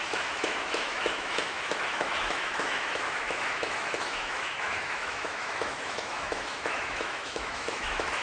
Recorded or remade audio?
remade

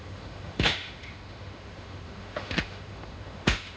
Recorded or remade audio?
remade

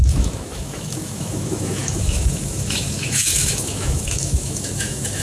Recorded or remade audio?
remade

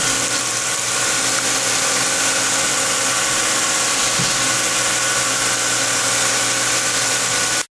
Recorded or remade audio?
recorded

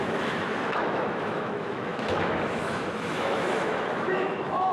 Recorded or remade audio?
remade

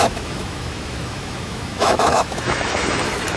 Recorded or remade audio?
remade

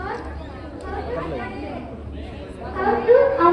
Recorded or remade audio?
recorded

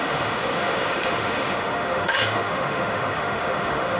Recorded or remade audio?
remade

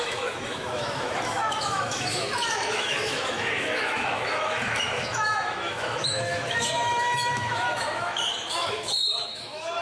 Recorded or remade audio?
remade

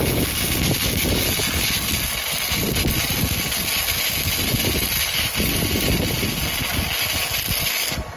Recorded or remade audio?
recorded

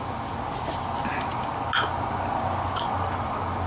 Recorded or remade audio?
recorded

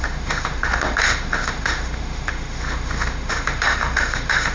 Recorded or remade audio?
remade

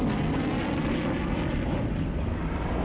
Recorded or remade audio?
recorded